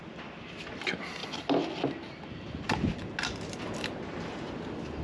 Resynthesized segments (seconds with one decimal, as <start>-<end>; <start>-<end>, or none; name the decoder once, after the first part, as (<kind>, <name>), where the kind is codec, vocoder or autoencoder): none